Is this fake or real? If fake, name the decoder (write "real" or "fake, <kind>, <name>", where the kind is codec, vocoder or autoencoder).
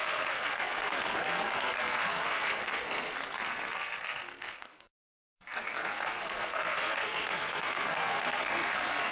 fake, codec, SNAC